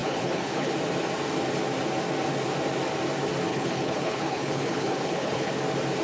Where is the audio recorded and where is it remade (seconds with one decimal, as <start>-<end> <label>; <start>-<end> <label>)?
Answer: 0.0-0.7 remade; 0.7-3.5 recorded; 3.5-5.5 remade; 5.5-6.0 recorded